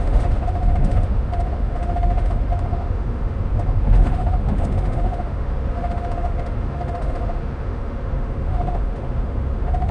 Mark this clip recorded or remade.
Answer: remade